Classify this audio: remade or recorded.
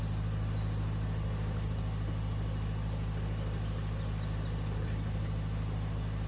recorded